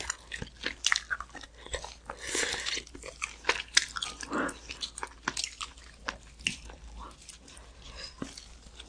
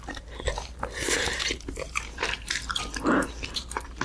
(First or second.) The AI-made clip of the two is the second